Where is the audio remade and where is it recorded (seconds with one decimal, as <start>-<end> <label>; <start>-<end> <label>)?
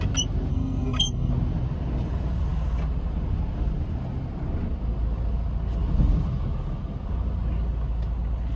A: 0.0-0.5 recorded; 0.5-1.3 remade; 1.3-8.6 recorded